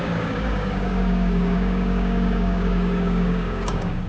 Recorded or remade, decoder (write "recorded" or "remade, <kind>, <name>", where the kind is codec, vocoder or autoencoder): remade, codec, DAC